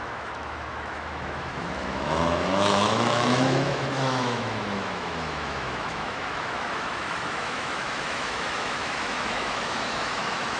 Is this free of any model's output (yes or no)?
no